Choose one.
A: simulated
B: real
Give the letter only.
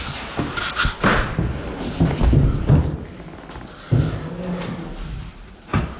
B